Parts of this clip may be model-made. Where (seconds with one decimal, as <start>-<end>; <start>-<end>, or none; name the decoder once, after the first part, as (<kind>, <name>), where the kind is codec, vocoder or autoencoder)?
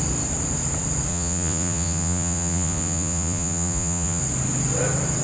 1.1-4.2 (vocoder, Vocos)